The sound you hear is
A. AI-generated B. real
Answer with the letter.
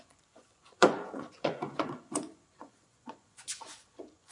A